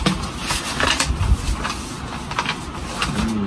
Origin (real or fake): real